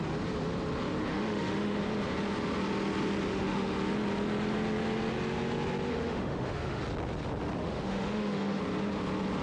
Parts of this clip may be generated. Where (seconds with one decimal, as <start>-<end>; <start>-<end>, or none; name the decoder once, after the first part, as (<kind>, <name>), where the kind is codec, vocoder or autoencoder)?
1.1-1.8 (autoencoder, DAC-VAE); 3.3-3.8; 5.9-6.8; 7.6-8.6